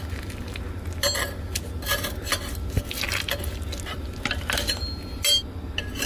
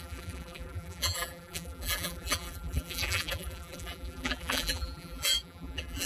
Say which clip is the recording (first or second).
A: first